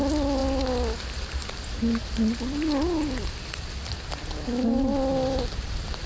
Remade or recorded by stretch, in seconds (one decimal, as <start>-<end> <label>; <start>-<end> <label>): 0.0-6.1 recorded